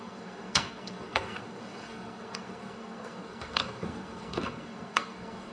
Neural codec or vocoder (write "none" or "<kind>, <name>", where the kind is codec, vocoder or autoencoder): codec, SNAC